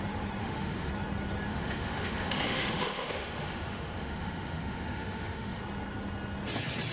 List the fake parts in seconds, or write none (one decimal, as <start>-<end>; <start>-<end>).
0.4-0.9; 1.5-5.6